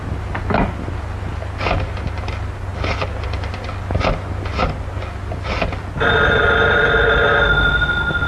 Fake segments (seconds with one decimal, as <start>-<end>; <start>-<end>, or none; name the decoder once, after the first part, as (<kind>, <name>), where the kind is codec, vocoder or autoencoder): none